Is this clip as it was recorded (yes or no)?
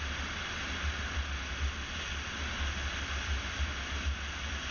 yes